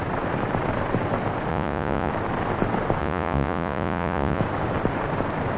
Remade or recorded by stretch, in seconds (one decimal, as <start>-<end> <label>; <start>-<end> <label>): 0.0-1.5 recorded; 1.5-2.1 remade; 2.1-3.0 recorded; 3.0-4.4 remade; 4.4-5.6 recorded